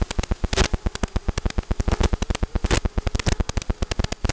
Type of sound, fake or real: real